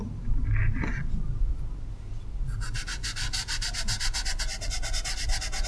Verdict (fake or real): real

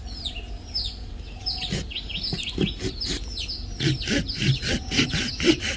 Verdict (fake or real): real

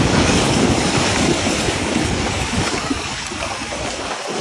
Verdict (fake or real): fake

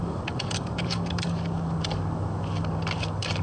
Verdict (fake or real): fake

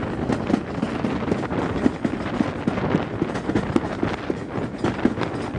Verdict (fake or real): real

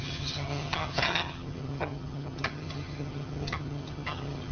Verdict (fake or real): fake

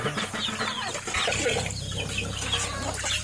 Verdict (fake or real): real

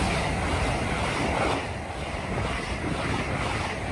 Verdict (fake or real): real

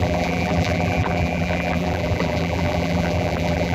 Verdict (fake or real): fake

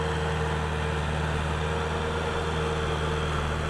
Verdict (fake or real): real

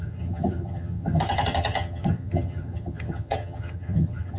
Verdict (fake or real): fake